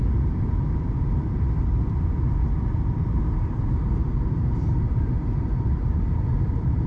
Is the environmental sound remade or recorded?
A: remade